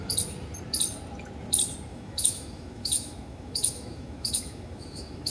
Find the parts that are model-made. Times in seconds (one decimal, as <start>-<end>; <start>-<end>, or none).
1.9-5.3